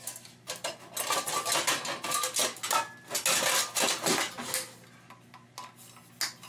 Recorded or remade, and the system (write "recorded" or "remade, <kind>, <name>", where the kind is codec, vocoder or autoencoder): recorded